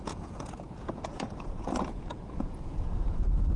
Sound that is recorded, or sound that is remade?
remade